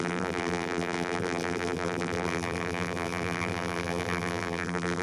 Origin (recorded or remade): remade